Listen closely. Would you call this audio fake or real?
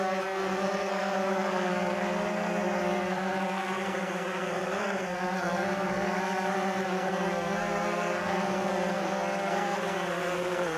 fake